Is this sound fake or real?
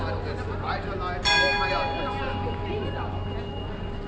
real